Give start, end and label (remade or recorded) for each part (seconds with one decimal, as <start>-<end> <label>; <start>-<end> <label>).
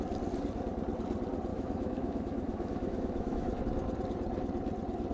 0.0-1.5 recorded; 1.5-3.6 remade; 3.6-5.1 recorded